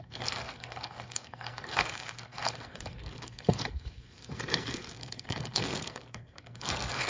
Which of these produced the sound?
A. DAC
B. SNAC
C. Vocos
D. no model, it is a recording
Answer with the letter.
B